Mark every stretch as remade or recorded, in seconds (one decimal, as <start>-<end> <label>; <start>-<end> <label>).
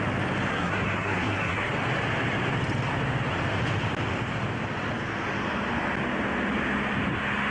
0.0-0.5 recorded; 0.5-1.7 remade; 1.7-7.5 recorded